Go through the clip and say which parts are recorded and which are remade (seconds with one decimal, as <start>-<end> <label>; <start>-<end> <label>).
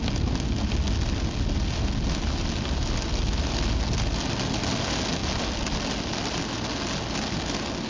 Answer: 0.0-7.9 recorded